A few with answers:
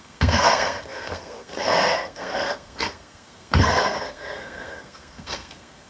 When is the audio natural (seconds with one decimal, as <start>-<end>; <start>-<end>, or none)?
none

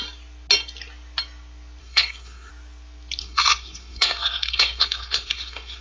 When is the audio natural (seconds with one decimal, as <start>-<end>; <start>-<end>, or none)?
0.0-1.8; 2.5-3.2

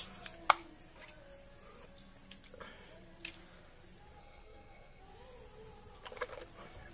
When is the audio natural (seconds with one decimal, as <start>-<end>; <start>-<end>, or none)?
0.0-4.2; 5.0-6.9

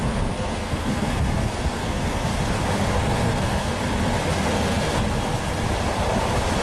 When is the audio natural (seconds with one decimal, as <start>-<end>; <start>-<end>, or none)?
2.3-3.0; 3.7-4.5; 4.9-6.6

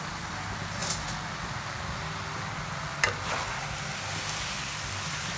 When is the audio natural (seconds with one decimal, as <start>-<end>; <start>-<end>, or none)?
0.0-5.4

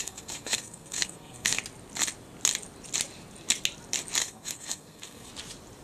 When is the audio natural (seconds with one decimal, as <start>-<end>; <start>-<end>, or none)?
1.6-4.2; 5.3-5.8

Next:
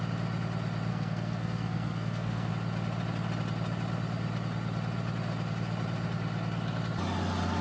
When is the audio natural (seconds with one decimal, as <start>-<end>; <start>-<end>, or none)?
0.0-0.9; 2.5-7.6

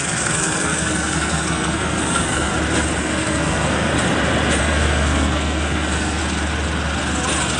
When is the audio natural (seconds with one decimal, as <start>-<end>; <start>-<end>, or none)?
2.5-3.0; 3.9-4.6; 6.2-7.6